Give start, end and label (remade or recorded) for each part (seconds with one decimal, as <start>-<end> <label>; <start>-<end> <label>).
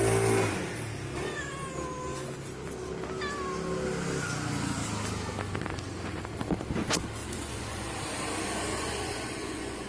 0.0-7.2 recorded; 7.2-7.9 remade; 7.9-8.7 recorded; 8.7-9.9 remade